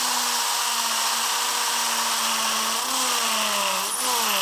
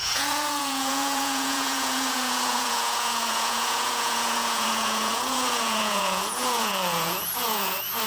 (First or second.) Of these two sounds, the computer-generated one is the second